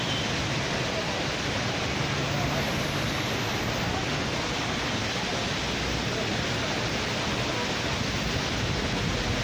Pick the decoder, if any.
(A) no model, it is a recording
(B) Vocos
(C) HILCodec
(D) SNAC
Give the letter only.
A